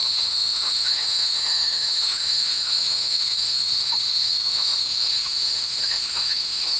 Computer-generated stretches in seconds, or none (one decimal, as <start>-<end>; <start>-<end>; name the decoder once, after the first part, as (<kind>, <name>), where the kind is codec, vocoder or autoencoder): 0.0-6.8 (autoencoder, DAC-VAE)